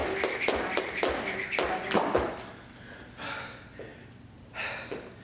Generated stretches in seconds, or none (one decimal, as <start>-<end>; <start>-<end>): none